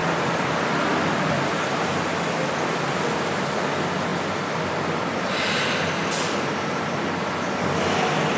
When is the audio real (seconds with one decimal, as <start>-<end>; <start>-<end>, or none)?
0.0-8.4